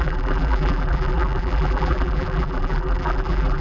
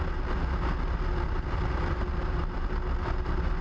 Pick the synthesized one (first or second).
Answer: first